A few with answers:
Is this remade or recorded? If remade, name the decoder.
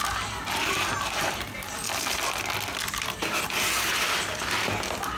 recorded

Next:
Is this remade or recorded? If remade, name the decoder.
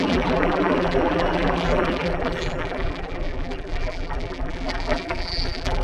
remade, vocoder, BigVGAN v2